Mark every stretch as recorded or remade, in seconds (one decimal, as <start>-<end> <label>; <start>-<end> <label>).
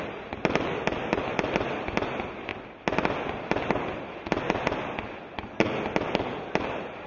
0.0-7.1 recorded